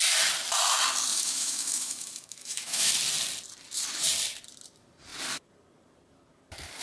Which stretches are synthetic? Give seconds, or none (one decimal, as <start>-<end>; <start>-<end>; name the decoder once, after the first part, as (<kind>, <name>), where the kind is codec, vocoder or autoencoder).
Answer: 1.1-2.9 (autoencoder, DAC-VAE)